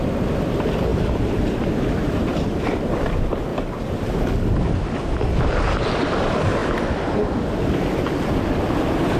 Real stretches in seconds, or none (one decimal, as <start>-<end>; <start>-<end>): 0.0-0.9; 1.6-2.0; 2.5-3.5; 4.3-9.2